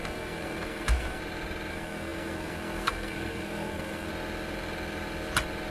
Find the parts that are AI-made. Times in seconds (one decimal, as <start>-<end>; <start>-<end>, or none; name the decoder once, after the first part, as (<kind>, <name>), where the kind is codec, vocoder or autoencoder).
0.0-1.2 (codec, SNAC); 1.7-4.1